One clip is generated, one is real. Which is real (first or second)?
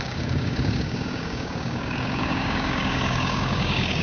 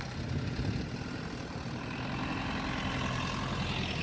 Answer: second